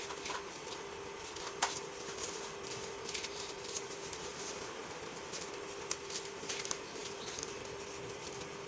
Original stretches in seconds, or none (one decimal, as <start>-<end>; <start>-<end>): 0.0-8.7